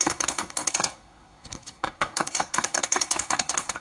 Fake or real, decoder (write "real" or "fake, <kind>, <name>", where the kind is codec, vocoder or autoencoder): fake, codec, SNAC